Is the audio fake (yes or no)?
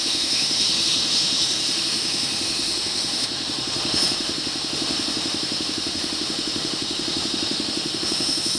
yes